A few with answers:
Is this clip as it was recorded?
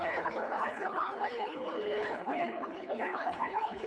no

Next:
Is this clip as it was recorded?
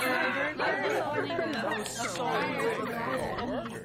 yes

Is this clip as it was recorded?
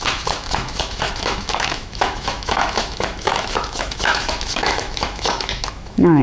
no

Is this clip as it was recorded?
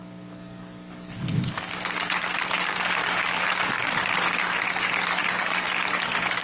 no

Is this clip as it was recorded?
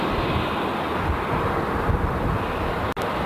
yes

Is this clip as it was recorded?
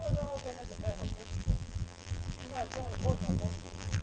no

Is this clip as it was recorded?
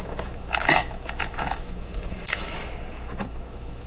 no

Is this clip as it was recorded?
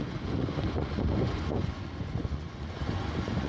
no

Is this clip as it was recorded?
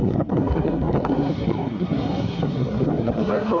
no